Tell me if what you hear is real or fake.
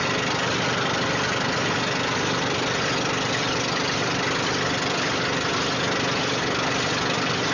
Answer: real